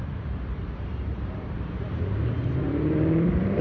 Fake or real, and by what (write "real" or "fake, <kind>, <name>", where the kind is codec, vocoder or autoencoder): fake, vocoder, BigVGAN v2